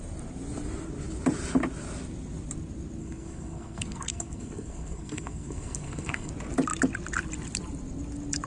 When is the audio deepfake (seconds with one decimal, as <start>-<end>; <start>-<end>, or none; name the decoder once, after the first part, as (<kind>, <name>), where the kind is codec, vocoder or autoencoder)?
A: 3.0-6.3 (codec, SNAC)